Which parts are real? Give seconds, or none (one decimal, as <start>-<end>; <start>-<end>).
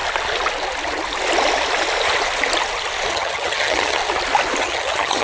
0.0-3.1; 4.0-4.6